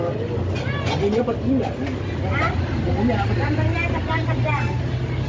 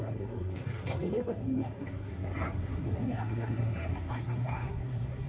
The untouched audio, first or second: first